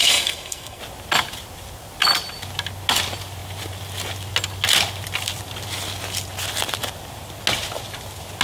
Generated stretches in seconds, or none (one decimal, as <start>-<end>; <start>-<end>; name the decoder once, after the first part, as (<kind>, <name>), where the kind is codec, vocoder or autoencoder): 0.0-0.8 (codec, SNAC)